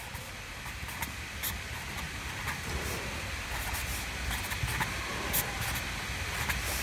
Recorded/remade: recorded